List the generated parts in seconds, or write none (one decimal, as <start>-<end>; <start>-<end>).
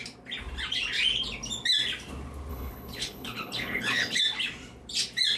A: 2.5-4.2